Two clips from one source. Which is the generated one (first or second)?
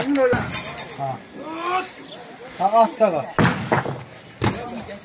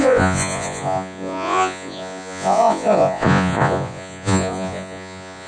second